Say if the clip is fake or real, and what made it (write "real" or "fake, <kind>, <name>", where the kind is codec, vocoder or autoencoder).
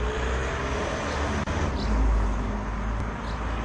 real